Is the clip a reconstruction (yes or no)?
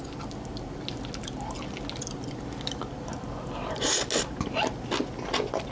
no